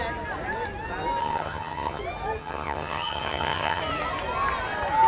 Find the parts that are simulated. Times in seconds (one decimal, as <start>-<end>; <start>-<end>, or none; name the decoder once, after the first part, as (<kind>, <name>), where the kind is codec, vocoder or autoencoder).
1.2-2.0 (vocoder, HiFi-GAN); 2.4-3.8